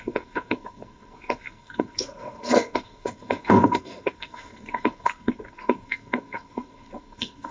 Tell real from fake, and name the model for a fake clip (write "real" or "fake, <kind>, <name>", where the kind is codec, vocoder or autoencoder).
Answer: fake, codec, SNAC